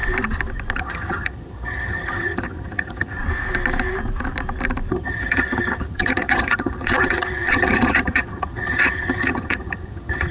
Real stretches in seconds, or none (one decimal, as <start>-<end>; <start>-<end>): 0.0-0.8; 3.2-4.9